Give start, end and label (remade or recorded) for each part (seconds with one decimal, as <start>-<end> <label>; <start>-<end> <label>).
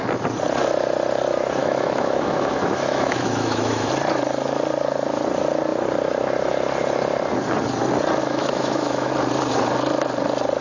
0.0-1.6 recorded; 1.6-3.9 remade; 3.9-8.2 recorded; 8.2-9.1 remade; 9.1-10.6 recorded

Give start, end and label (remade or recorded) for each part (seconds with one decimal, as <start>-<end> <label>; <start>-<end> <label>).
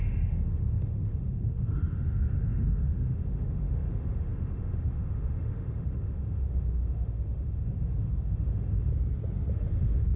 0.0-8.9 remade; 8.9-9.5 recorded; 9.5-10.2 remade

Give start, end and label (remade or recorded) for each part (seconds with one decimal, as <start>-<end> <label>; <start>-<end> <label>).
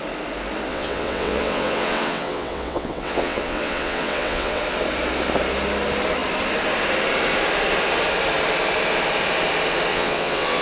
0.0-0.7 recorded; 0.7-4.6 remade; 4.6-9.9 recorded; 9.9-10.6 remade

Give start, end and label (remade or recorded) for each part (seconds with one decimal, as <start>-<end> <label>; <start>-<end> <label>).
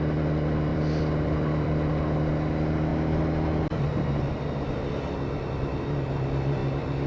0.0-0.7 recorded; 0.7-1.9 remade; 1.9-7.1 recorded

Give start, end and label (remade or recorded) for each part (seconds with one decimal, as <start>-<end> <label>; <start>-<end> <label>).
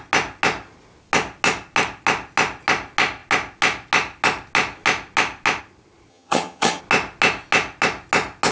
0.0-6.1 recorded; 6.1-6.8 remade; 6.8-8.5 recorded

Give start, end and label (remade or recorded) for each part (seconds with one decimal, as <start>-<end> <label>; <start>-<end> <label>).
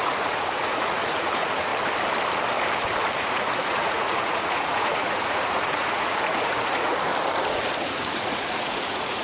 0.0-1.7 remade; 1.7-3.2 recorded; 3.2-7.1 remade; 7.1-7.8 recorded; 7.8-9.2 remade